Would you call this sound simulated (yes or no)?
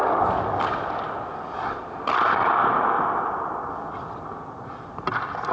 no